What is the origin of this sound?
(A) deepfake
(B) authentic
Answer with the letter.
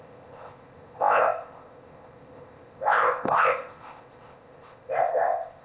A